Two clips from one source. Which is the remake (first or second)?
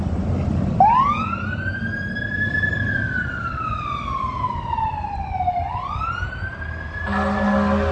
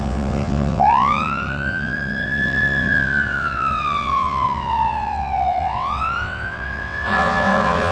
second